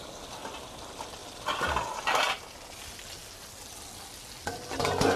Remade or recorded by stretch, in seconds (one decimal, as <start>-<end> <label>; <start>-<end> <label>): 0.0-5.2 recorded